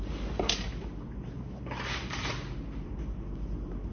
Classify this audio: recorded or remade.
remade